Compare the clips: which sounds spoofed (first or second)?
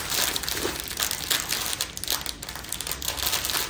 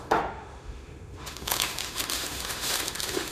second